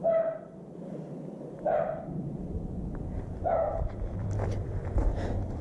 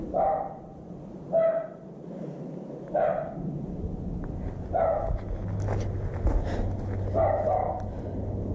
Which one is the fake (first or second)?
first